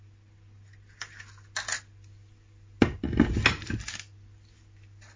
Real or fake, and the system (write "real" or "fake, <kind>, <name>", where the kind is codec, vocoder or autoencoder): real